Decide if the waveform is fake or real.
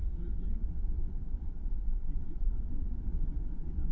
fake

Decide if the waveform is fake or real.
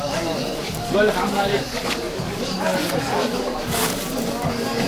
fake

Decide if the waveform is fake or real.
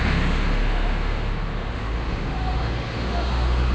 fake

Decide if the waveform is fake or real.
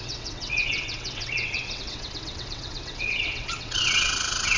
fake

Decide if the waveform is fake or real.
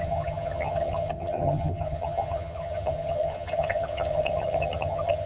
fake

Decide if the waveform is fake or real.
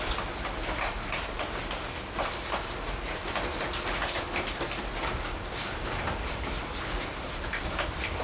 real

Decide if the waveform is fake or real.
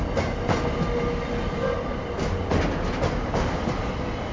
real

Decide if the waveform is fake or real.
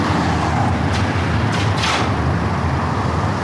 real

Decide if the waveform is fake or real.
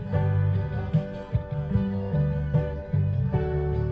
real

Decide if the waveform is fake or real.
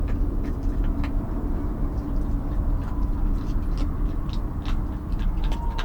real